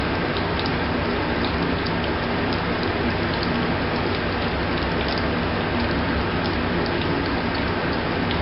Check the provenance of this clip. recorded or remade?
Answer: recorded